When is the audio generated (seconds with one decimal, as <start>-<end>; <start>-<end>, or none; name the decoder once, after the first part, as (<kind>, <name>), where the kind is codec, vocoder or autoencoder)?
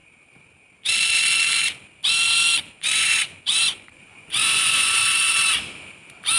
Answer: 2.6-5.0 (vocoder, Vocos)